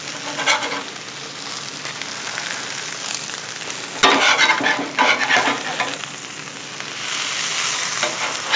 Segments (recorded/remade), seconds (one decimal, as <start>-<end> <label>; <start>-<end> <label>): 0.0-8.6 recorded